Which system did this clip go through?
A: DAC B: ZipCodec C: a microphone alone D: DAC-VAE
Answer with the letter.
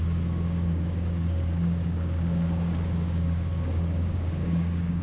A